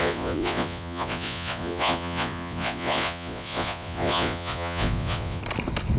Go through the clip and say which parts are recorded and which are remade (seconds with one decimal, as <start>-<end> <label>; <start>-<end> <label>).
0.0-5.4 remade; 5.4-6.0 recorded